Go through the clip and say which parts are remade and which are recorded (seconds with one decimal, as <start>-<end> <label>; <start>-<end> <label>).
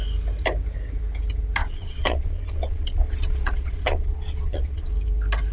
0.0-1.6 recorded; 1.6-4.9 remade; 4.9-5.5 recorded